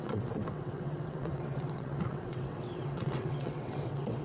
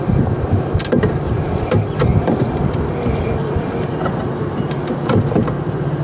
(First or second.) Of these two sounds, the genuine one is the second